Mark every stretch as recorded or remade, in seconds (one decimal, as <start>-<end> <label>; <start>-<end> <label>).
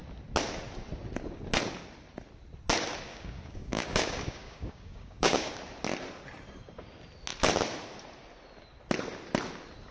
0.0-3.1 recorded; 3.1-5.5 remade; 5.5-9.9 recorded